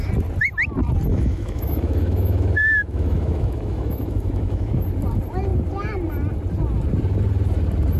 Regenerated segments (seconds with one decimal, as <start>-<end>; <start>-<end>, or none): 1.1-4.7